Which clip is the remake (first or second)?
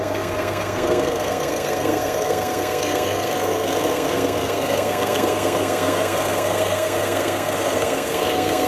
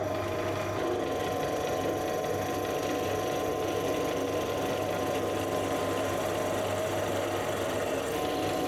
first